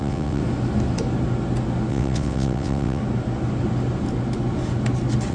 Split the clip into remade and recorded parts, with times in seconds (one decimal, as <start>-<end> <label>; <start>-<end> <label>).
0.0-0.4 remade; 0.4-1.9 recorded; 1.9-3.0 remade; 3.0-5.3 recorded